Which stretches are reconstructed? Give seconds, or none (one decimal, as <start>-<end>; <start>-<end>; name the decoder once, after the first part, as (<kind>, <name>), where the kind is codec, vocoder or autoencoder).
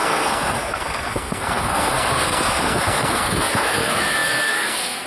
0.0-5.1 (codec, SNAC)